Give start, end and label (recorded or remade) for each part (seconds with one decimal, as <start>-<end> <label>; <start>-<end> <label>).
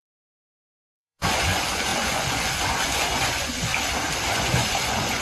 0.0-3.7 remade; 3.7-4.3 recorded; 4.3-5.2 remade